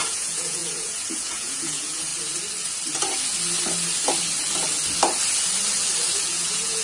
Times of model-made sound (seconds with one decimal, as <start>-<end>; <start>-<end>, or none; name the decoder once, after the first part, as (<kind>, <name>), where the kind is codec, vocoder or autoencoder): 0.0-2.1 (vocoder, Vocos); 6.2-6.8